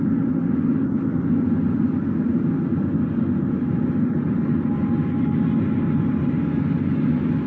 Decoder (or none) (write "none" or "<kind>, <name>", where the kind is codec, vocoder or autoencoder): none